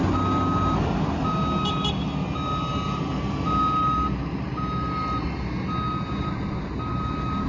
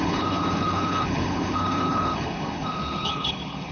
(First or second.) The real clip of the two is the first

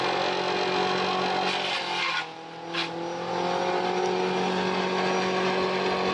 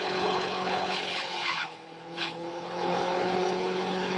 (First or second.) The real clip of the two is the first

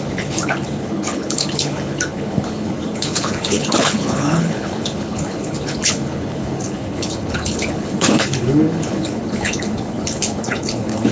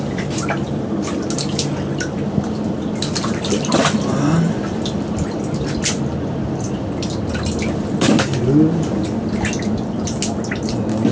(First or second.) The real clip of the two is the second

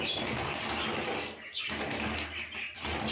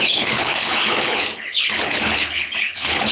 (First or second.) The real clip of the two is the first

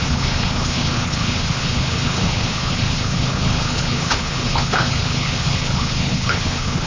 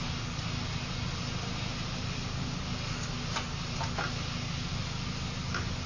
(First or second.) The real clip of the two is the second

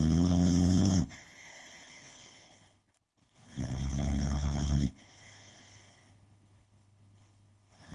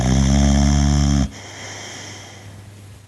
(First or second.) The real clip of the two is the second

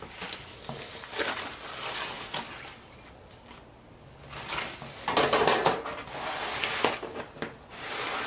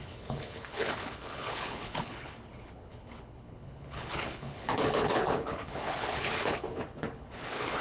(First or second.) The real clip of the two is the first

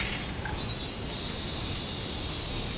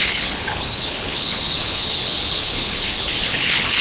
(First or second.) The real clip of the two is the first